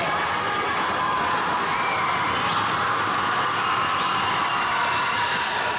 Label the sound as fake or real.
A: real